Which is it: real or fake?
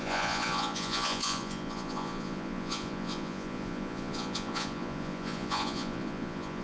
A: fake